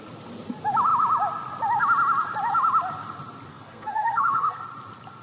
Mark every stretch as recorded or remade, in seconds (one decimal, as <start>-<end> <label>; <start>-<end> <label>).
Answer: 0.0-3.5 recorded; 3.5-4.6 remade; 4.6-5.2 recorded